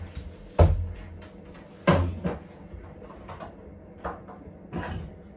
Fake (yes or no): no